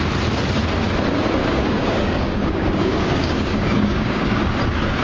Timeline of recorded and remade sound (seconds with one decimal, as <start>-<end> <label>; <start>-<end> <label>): 0.0-1.4 recorded; 1.4-4.4 remade; 4.4-5.0 recorded